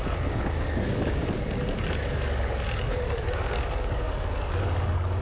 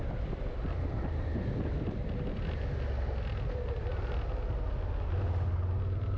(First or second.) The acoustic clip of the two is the second